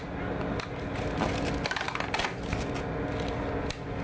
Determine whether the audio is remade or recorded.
recorded